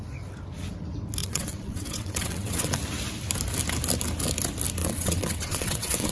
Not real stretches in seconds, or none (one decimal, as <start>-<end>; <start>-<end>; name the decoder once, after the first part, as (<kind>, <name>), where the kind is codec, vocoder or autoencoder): 1.2-2.8 (vocoder, WaveNeXt); 4.8-6.1